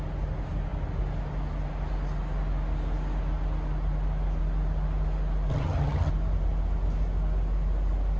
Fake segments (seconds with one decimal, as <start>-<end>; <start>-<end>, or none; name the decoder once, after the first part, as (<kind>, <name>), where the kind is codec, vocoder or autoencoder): 5.5-6.1 (vocoder, HiFi-GAN)